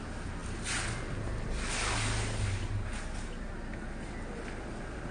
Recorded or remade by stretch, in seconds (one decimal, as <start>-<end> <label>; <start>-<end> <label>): 0.0-5.1 recorded